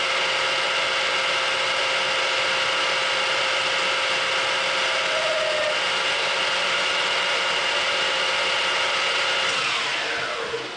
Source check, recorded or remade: recorded